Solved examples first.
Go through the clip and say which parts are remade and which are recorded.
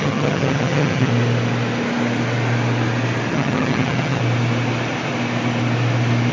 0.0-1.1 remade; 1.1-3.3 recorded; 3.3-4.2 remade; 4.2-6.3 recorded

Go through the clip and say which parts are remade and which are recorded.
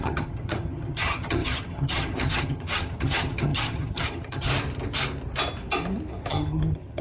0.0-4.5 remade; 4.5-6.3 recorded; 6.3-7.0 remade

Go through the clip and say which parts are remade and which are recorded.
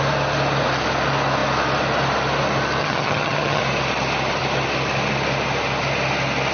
0.0-2.8 recorded; 2.8-3.6 remade; 3.6-6.5 recorded